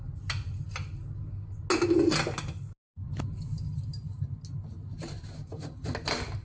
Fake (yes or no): no